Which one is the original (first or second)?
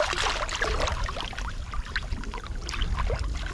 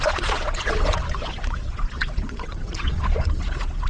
first